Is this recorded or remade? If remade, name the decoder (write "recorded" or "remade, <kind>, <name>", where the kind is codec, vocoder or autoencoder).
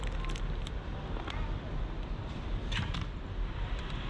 remade, vocoder, BigVGAN v2